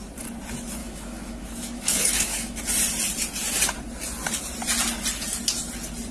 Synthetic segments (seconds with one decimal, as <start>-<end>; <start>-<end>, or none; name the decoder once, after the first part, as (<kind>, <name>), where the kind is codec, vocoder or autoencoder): 0.8-2.6 (autoencoder, DAC-VAE)